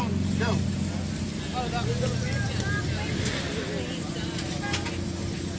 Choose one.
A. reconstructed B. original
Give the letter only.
B